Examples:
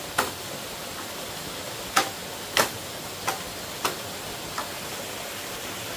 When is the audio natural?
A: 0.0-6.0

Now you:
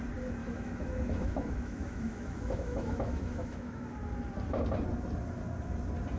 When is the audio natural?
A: 0.0-0.4; 3.8-6.2

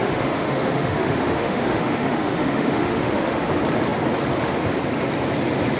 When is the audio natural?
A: 3.5-5.8

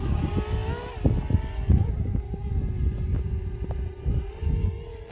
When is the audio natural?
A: 0.0-5.1

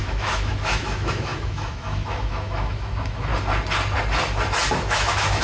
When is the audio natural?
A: 3.3-4.8

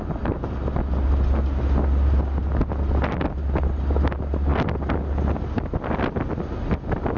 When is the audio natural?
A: 0.0-7.2

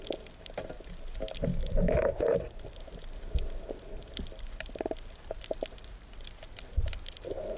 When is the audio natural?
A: 0.0-1.5; 2.2-7.6